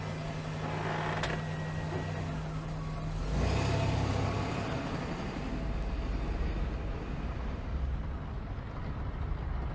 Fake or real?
real